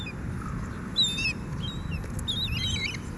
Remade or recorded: recorded